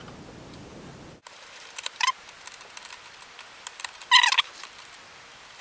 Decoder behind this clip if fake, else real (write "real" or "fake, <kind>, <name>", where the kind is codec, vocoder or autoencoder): real